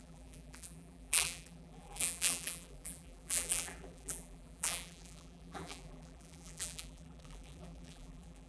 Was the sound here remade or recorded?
remade